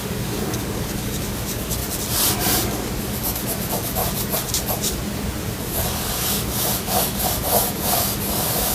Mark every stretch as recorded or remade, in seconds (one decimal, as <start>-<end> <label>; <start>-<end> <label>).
0.0-1.8 remade; 1.8-2.6 recorded; 2.6-4.0 remade; 4.0-5.4 recorded; 5.4-8.7 remade